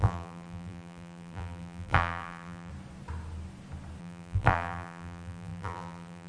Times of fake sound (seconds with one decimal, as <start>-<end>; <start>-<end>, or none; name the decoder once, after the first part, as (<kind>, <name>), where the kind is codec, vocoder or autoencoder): 0.0-2.7 (vocoder, BigVGAN v2); 4.0-6.3